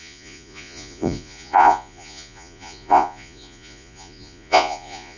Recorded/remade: remade